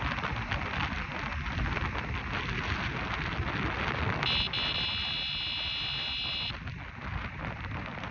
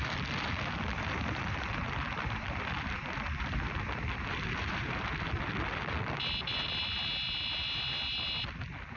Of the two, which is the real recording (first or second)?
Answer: first